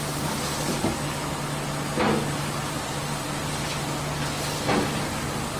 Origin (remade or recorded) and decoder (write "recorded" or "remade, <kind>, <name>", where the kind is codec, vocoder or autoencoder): recorded